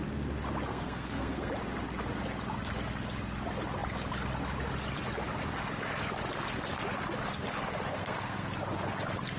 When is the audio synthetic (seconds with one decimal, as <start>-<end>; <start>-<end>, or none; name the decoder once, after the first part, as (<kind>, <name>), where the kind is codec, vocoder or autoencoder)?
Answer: 0.7-1.5 (codec, SNAC); 7.9-8.5